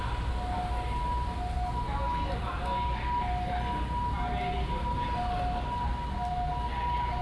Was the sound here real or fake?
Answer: real